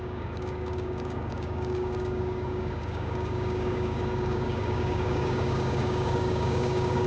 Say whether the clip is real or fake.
fake